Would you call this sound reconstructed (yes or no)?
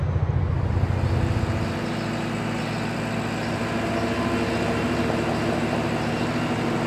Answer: no